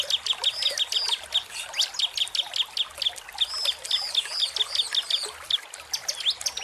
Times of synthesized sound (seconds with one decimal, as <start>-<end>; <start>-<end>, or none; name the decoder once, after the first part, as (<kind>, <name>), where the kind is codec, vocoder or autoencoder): none